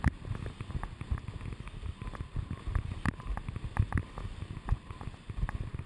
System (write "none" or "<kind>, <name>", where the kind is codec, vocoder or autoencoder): none